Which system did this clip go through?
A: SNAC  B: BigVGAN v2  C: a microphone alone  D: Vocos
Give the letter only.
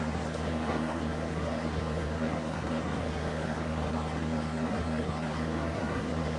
A